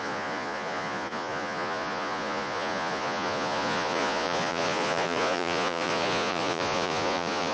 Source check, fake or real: fake